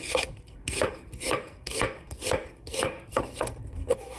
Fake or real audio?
fake